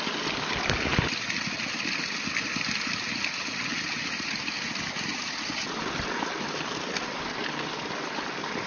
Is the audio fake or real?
real